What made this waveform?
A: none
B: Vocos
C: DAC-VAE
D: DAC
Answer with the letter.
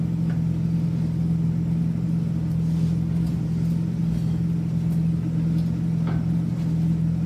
A